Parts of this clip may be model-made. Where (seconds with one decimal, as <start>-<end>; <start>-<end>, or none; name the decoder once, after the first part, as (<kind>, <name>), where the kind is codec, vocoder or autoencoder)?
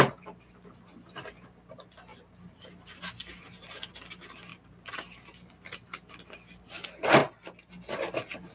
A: none